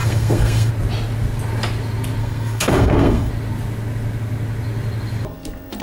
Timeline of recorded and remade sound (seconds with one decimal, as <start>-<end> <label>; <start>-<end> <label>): 0.0-0.7 remade; 0.7-2.2 recorded; 2.2-3.3 remade; 3.3-5.8 recorded